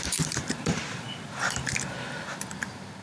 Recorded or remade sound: remade